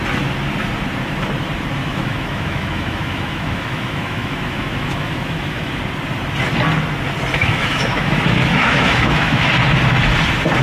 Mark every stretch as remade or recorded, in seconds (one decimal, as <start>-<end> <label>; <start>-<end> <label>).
0.0-1.8 recorded; 1.8-5.8 remade; 5.8-7.4 recorded; 7.4-9.5 remade; 9.5-10.6 recorded